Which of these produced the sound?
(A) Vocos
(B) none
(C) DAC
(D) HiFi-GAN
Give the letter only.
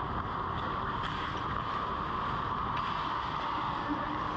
B